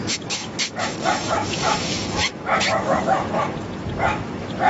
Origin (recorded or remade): remade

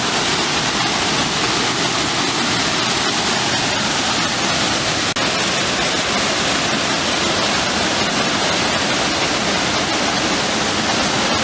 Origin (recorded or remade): recorded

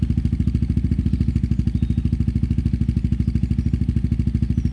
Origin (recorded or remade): recorded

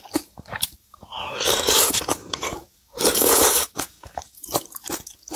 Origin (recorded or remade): remade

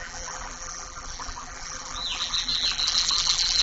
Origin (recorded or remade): remade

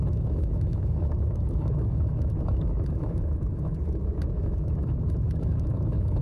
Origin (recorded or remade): remade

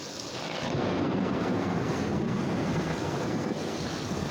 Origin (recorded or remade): remade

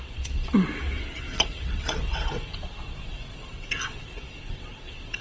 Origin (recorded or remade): remade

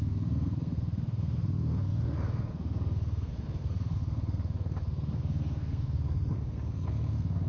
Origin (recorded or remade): remade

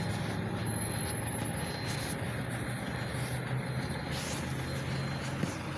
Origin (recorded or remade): recorded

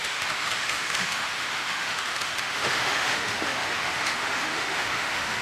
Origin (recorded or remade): remade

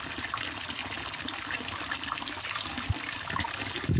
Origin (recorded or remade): remade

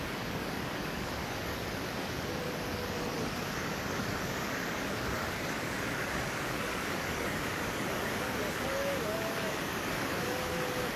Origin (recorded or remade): remade